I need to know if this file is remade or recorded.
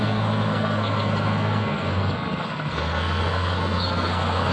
remade